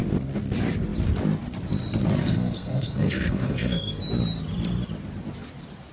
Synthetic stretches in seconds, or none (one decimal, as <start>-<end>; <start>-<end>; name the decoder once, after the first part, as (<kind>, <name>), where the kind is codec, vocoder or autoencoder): 2.2-4.0 (codec, SNAC)